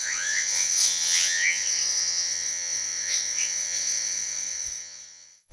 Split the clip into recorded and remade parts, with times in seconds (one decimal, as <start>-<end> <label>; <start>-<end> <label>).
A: 0.0-5.5 remade